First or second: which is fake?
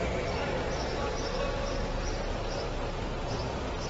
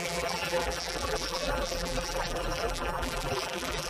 second